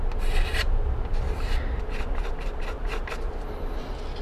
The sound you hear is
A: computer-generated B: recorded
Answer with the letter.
B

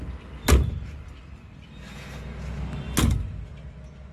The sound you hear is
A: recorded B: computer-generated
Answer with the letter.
A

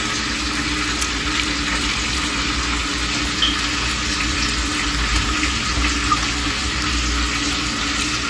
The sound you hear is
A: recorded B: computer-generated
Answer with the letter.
A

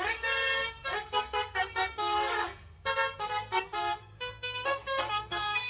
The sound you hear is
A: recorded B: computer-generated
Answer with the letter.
B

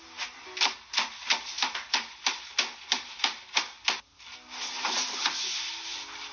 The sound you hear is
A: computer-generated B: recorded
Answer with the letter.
B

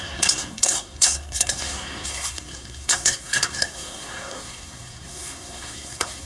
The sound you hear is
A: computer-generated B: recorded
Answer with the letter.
A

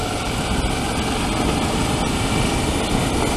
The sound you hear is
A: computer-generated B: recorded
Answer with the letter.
B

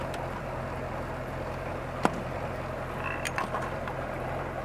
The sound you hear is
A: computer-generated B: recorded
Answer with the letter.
B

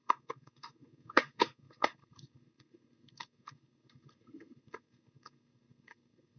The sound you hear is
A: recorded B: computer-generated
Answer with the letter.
B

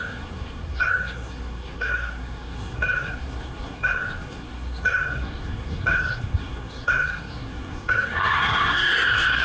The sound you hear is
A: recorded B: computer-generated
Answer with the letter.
B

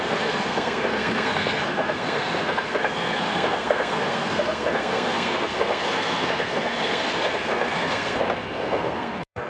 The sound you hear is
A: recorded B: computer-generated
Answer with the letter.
B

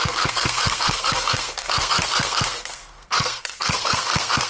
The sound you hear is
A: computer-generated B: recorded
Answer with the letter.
A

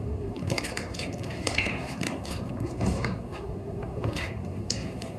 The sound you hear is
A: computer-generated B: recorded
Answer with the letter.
A